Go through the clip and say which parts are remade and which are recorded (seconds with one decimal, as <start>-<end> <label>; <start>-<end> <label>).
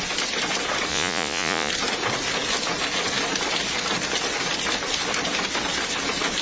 0.0-0.9 recorded; 0.9-1.7 remade; 1.7-6.4 recorded